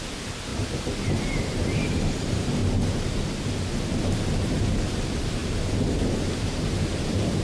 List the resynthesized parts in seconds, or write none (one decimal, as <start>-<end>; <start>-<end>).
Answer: 0.0-2.6; 4.0-5.4; 6.1-7.4